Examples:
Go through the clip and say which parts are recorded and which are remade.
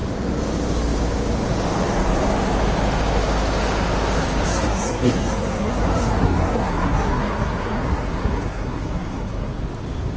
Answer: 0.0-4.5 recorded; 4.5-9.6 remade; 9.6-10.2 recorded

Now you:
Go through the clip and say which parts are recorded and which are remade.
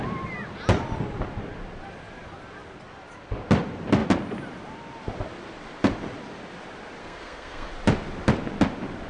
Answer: 0.0-7.0 recorded; 7.0-7.7 remade; 7.7-9.1 recorded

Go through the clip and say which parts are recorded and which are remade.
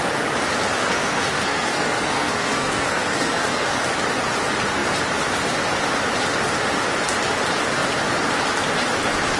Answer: 0.0-0.8 recorded; 0.8-3.8 remade; 3.8-9.4 recorded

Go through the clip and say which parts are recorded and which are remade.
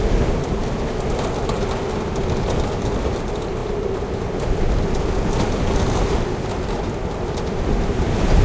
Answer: 0.0-8.4 recorded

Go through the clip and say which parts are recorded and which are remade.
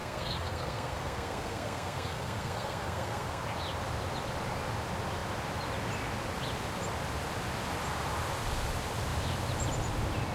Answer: 0.0-3.4 remade; 3.4-10.3 recorded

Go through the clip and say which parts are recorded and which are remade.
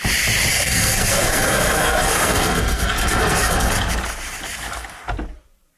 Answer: 0.0-0.5 recorded; 0.5-3.7 remade; 3.7-5.8 recorded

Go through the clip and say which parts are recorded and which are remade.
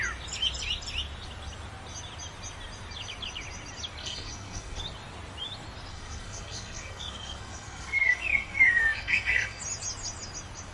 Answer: 0.0-4.0 recorded; 4.0-4.8 remade; 4.8-5.9 recorded; 5.9-9.6 remade; 9.6-10.7 recorded